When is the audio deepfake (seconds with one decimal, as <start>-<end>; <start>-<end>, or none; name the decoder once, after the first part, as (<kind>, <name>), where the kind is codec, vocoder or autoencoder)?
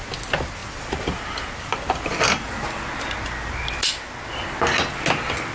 none